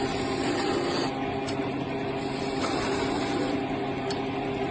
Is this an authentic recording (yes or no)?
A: yes